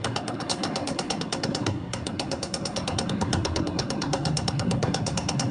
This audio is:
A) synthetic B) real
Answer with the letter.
A